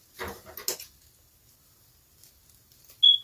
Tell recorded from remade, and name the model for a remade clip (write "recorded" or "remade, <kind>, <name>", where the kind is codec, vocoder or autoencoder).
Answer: recorded